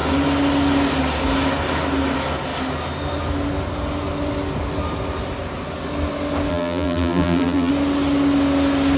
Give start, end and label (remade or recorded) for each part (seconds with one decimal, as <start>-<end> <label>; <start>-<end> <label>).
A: 0.0-6.5 recorded; 6.5-7.7 remade; 7.7-9.0 recorded